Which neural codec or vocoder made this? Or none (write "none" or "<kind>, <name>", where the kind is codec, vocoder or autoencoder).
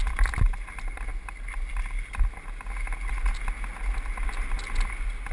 none